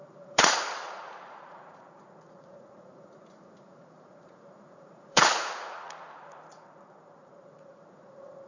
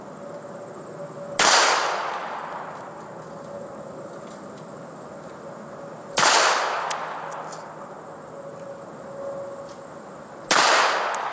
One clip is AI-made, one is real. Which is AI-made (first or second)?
first